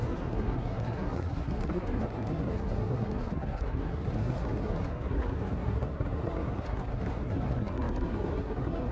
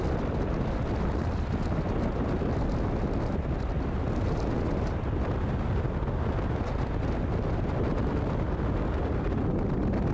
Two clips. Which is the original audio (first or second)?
second